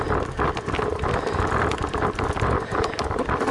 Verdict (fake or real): fake